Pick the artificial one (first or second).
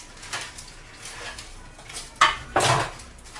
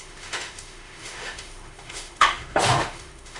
second